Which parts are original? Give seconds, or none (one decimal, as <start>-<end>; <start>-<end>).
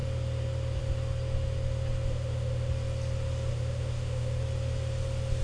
0.0-2.1; 2.7-3.5; 4.4-5.4